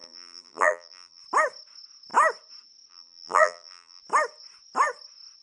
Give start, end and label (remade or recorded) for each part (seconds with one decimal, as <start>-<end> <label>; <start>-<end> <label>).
0.0-1.2 remade; 1.2-2.9 recorded; 2.9-4.0 remade; 4.0-5.4 recorded